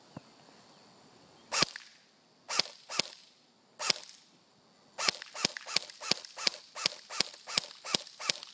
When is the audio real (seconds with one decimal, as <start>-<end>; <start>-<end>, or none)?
0.0-8.5